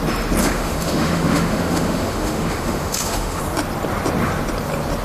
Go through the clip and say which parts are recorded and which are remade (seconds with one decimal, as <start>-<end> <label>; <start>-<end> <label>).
0.0-0.4 recorded; 0.4-3.4 remade; 3.4-5.0 recorded